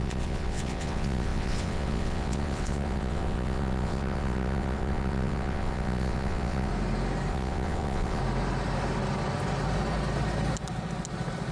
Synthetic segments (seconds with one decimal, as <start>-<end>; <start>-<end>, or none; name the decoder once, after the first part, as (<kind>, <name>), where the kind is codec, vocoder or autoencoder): 0.0-6.7 (vocoder, WaveNeXt); 7.3-8.2